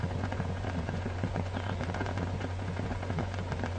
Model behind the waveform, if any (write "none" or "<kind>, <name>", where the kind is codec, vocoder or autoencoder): vocoder, Vocos